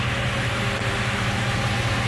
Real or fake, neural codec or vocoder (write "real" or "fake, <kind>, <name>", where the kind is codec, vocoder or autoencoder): real